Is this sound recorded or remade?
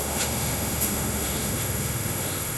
remade